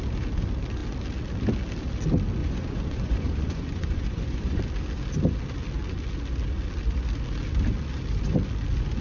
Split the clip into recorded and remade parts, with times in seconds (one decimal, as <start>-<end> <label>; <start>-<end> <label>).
0.0-2.4 recorded; 2.4-4.6 remade; 4.6-9.0 recorded